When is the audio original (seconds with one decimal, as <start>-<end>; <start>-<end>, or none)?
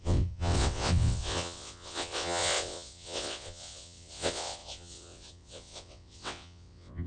none